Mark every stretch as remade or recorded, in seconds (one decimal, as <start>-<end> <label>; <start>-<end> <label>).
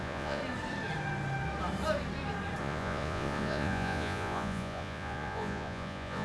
0.0-0.4 remade; 0.4-2.6 recorded; 2.6-6.2 remade